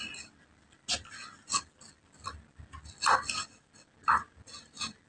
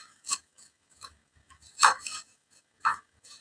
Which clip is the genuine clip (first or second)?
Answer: first